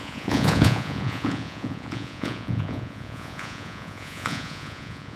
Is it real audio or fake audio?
fake